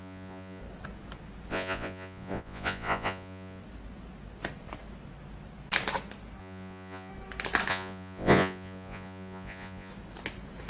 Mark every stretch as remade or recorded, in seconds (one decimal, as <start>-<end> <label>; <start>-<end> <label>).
0.0-0.6 remade; 0.6-1.5 recorded; 1.5-3.6 remade; 3.6-6.4 recorded; 6.4-7.1 remade; 7.1-7.7 recorded; 7.7-9.9 remade; 9.9-10.7 recorded